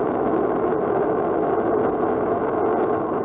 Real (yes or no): yes